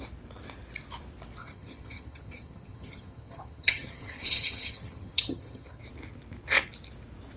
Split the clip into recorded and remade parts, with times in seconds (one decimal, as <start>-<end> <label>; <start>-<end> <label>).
0.0-1.4 recorded; 1.4-5.8 remade; 5.8-7.4 recorded